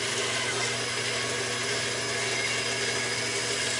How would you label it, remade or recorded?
recorded